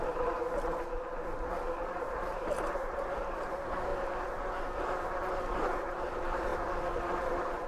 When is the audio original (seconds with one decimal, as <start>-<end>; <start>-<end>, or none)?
0.4-2.0; 3.9-5.5; 6.5-7.2